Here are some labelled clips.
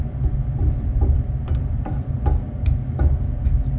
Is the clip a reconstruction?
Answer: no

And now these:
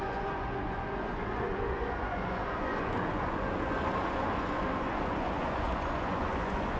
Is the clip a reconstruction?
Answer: yes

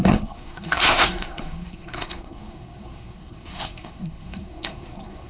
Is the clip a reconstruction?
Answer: yes